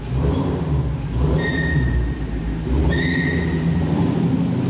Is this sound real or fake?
real